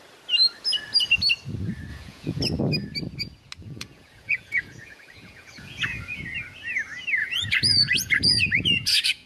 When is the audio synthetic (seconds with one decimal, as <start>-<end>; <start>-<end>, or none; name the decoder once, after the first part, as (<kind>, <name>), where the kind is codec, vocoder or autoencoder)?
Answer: 1.9-2.4 (vocoder, Vocos); 3.6-6.2; 7.2-9.3